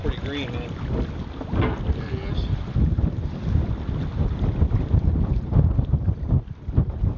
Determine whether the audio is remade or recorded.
recorded